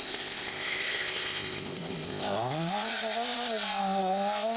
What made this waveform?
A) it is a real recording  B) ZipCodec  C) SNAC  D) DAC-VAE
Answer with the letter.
B